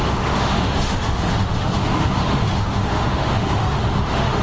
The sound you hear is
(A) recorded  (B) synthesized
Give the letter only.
B